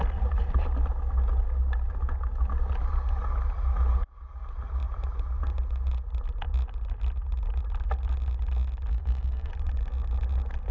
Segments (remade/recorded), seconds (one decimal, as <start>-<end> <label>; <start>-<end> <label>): 0.0-8.9 recorded; 8.9-9.5 remade; 9.5-10.7 recorded

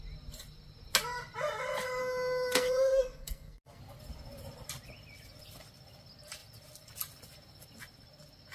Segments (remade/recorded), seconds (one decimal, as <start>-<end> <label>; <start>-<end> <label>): 0.0-2.0 recorded; 2.0-3.8 remade; 3.8-8.5 recorded